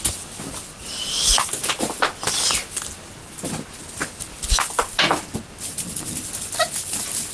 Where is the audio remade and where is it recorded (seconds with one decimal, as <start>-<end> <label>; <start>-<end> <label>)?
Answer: 0.0-7.3 recorded